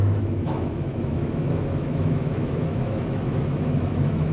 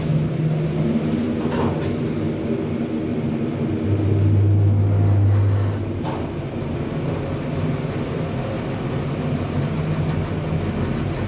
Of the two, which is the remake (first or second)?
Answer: first